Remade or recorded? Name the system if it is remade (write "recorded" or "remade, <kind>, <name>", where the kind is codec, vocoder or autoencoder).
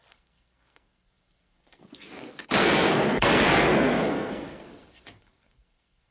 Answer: remade, codec, SNAC